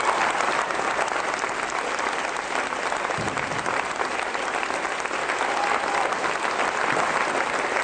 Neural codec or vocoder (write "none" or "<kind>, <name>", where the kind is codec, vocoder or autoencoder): none